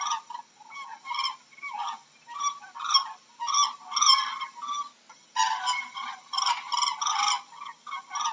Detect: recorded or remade recorded